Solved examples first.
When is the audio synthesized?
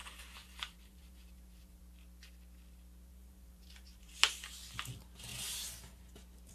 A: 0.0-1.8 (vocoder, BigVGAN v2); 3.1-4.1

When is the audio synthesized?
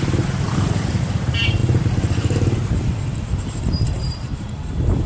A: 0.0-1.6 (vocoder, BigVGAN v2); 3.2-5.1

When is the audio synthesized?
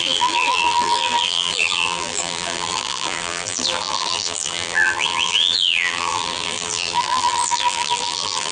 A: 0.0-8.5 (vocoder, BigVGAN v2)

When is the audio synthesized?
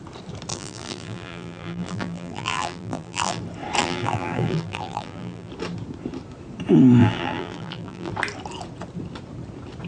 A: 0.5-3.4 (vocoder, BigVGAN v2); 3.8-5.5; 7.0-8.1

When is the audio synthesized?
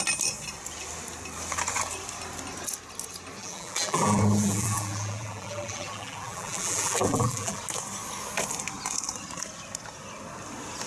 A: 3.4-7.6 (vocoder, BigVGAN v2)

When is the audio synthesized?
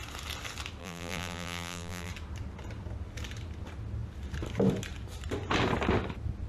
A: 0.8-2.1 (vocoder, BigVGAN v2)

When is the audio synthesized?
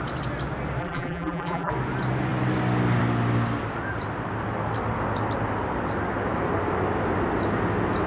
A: 0.8-1.7 (vocoder, BigVGAN v2)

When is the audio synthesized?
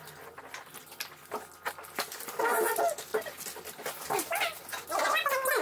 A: none